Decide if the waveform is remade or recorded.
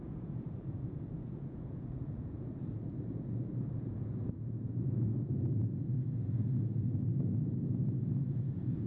remade